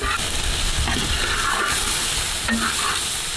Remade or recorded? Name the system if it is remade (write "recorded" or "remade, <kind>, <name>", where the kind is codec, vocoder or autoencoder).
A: recorded